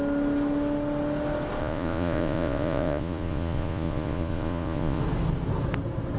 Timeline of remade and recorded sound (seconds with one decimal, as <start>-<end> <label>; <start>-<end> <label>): 0.0-1.6 recorded; 1.6-5.0 remade; 5.0-6.2 recorded